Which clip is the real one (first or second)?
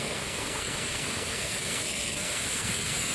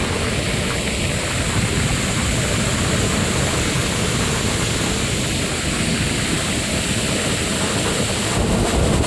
second